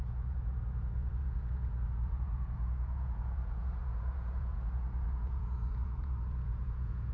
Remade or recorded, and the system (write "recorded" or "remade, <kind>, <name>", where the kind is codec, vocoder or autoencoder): remade, vocoder, Vocos